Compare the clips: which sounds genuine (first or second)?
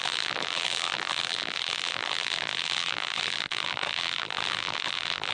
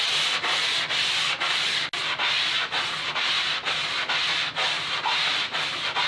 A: second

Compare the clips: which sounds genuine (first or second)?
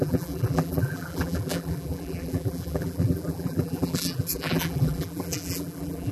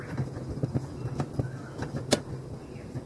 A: second